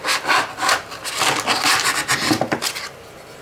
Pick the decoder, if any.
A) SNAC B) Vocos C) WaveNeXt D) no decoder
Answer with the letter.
D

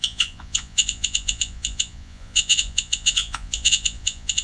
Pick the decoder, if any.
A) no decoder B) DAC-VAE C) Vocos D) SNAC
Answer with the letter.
C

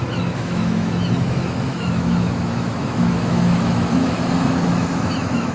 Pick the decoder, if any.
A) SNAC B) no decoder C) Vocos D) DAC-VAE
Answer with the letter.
D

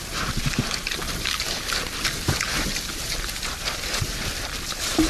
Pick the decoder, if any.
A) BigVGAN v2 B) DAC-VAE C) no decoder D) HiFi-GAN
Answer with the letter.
A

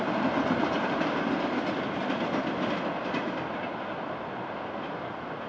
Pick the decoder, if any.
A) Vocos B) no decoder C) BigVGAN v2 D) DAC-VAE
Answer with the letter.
B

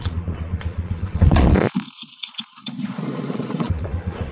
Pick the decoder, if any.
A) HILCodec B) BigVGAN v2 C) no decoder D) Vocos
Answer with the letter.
D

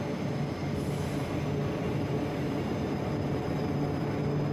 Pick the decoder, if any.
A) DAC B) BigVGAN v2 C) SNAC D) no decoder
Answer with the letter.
D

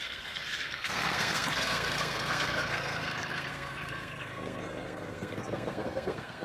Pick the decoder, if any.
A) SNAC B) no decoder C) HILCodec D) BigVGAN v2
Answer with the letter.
A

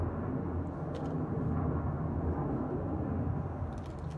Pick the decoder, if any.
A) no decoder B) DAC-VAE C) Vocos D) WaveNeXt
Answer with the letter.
A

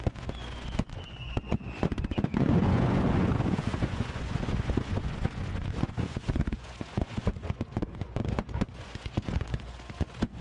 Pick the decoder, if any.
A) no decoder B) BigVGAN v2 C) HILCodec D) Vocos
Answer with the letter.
D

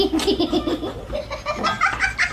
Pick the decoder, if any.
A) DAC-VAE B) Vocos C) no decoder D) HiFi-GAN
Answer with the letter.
C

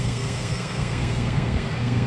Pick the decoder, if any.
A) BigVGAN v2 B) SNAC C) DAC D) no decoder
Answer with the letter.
B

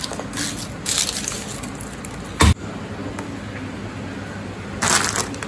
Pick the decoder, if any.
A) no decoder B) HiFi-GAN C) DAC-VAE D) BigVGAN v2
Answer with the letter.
A